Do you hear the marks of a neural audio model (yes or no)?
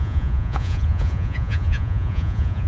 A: yes